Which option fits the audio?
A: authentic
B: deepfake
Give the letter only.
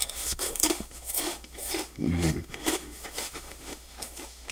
B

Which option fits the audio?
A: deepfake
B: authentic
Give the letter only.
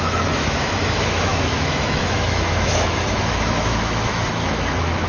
A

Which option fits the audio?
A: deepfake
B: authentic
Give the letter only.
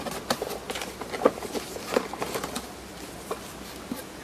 B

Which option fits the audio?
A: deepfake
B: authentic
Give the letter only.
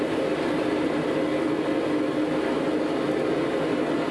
B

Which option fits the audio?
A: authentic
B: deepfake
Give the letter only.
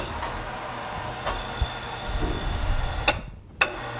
A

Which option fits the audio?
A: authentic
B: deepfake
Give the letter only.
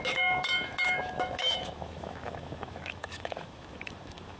B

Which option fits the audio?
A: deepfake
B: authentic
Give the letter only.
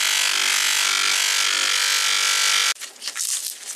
B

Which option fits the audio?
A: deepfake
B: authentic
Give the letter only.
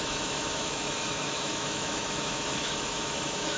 A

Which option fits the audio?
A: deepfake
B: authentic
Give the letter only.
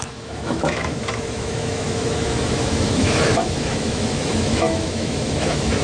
A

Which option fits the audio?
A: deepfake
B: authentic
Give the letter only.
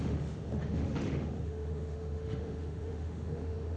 A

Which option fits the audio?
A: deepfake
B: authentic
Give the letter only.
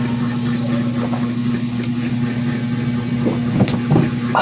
B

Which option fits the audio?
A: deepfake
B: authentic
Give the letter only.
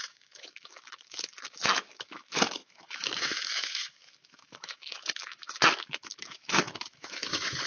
A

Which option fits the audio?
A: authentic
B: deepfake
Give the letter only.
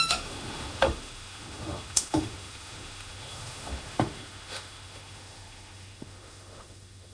B